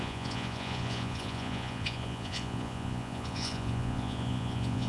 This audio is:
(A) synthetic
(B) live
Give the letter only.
A